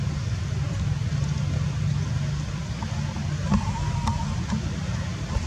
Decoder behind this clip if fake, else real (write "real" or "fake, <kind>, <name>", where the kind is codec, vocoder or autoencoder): real